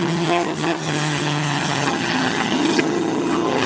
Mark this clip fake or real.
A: fake